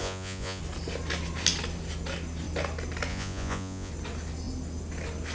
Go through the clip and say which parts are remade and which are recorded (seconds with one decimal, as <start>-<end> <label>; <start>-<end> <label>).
0.0-0.6 remade; 0.6-3.1 recorded; 3.1-3.9 remade; 3.9-5.3 recorded